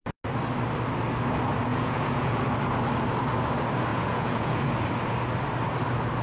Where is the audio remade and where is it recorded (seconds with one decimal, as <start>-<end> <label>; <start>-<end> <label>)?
0.0-1.7 recorded; 1.7-2.4 remade; 2.4-3.9 recorded; 3.9-4.6 remade; 4.6-6.2 recorded